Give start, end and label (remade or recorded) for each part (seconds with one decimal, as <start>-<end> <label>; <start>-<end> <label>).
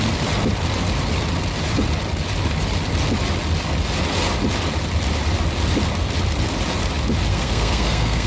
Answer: 0.0-7.3 recorded; 7.3-8.3 remade